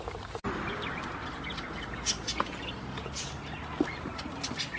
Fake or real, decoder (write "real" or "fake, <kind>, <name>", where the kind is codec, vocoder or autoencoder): real